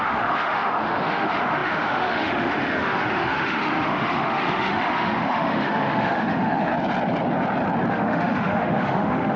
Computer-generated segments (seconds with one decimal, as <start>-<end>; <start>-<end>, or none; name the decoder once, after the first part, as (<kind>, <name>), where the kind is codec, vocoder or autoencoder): 0.0-6.7 (autoencoder, DAC-VAE); 7.9-9.4